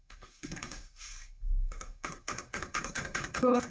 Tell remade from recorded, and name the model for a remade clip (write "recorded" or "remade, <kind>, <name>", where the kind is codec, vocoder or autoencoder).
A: remade, codec, SNAC